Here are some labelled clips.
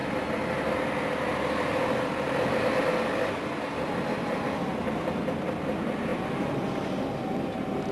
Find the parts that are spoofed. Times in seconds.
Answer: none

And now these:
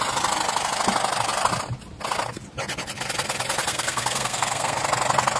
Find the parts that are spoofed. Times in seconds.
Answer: 3.7-4.8 (codec, SNAC)

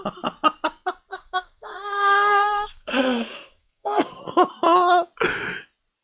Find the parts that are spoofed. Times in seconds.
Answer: 1.1-4.2 (codec, SNAC)

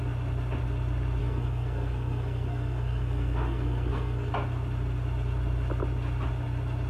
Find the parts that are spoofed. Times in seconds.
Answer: 1.2-4.3 (codec, SNAC)

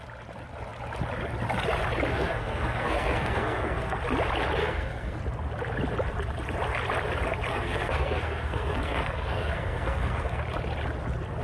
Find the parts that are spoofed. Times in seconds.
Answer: 2.1-4.0 (codec, SNAC); 4.6-5.2; 7.5-10.4

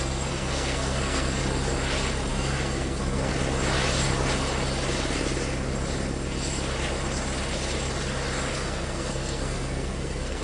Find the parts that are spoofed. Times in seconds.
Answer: 0.0-1.4 (codec, SNAC); 2.3-3.3; 8.5-10.4

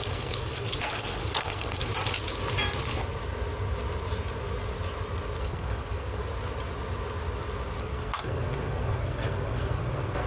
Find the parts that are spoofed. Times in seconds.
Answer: 0.0-1.9 (codec, SNAC); 5.4-6.2; 7.8-10.3